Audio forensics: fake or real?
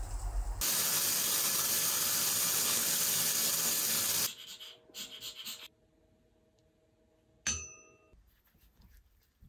real